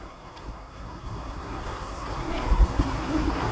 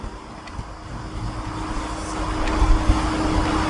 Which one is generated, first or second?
first